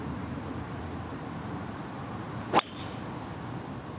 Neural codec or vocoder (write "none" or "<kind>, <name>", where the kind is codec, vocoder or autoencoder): none